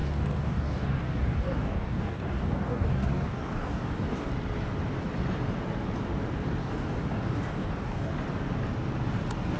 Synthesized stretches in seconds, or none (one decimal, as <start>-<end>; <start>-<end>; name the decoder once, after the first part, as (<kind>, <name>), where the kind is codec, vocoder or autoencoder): 0.0-4.3 (codec, DAC); 6.6-8.1

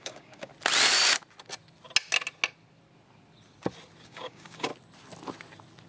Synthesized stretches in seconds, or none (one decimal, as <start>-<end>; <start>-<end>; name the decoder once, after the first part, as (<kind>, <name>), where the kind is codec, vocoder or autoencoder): 0.0-0.5 (codec, DAC); 4.0-4.7